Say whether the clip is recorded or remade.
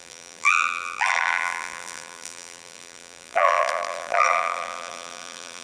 remade